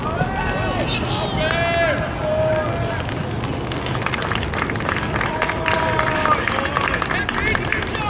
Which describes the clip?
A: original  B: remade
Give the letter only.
A